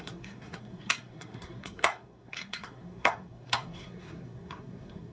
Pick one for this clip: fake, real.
fake